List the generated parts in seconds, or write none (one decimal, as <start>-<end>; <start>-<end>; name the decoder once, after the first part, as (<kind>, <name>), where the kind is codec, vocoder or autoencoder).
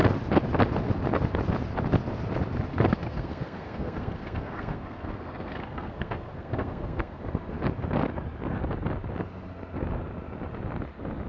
2.7-7.2 (codec, SNAC)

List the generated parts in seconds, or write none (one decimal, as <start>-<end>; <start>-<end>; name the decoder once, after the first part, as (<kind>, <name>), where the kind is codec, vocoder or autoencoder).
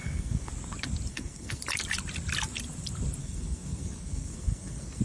0.0-0.5 (codec, SNAC); 1.1-1.6; 3.2-5.0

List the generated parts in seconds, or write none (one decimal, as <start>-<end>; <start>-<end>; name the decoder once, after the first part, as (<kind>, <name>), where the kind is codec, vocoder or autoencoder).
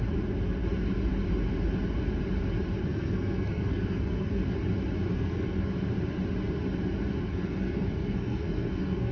2.8-4.5 (codec, SNAC); 5.1-5.7; 7.2-9.1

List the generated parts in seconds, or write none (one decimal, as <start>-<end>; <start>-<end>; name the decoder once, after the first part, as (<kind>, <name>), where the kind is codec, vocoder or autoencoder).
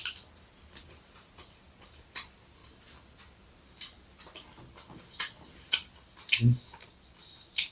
none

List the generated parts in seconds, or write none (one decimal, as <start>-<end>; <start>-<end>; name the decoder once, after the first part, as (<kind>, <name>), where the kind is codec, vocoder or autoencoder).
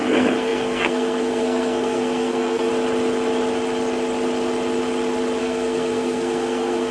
0.0-2.7 (codec, SNAC); 5.4-6.9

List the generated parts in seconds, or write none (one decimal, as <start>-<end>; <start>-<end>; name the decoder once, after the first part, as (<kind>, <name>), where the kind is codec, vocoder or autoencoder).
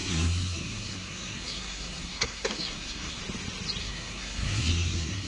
0.0-3.2 (codec, SNAC); 3.8-5.3